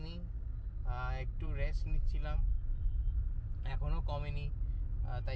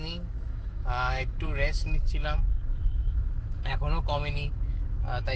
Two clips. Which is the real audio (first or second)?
first